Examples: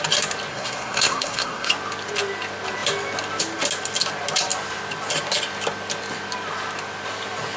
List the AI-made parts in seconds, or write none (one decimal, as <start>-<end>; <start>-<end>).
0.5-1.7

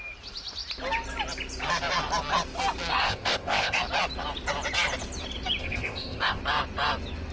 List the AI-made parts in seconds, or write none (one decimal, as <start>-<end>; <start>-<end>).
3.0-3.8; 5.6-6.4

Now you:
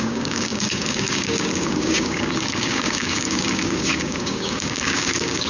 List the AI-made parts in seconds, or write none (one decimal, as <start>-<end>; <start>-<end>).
0.0-5.5

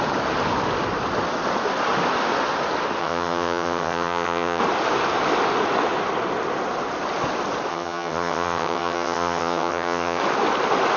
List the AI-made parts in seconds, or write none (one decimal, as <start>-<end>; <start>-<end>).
3.0-4.6; 7.7-10.2

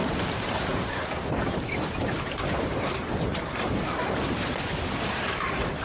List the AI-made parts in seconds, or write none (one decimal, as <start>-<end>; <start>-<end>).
0.0-5.8

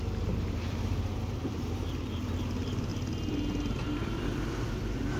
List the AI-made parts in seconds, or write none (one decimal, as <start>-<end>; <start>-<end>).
2.9-4.8

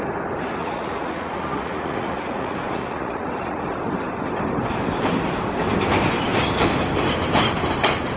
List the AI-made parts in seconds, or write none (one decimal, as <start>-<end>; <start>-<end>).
0.6-3.6